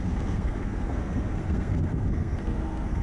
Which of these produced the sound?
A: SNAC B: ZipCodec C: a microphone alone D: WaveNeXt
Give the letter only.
A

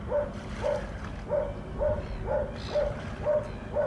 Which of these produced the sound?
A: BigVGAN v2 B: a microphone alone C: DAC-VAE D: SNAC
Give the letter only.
B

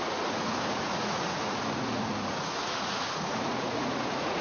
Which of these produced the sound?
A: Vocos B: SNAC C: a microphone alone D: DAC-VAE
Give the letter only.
A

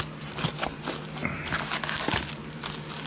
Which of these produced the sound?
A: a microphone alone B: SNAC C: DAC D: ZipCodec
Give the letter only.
A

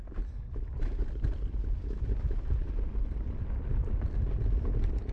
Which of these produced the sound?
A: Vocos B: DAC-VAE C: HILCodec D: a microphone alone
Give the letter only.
D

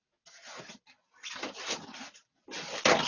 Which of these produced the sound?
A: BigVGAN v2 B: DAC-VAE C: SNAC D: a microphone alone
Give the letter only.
D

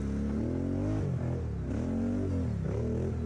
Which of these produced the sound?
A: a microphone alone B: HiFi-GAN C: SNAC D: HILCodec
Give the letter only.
A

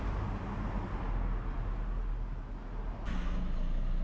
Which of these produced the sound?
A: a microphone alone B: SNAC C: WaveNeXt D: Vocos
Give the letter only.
A